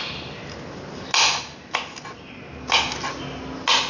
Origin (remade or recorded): recorded